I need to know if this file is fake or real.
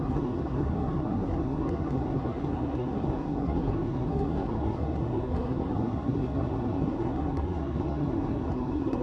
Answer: fake